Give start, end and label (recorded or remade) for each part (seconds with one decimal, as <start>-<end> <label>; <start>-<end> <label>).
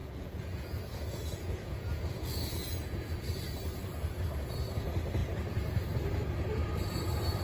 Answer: 0.0-3.2 remade; 3.2-7.4 recorded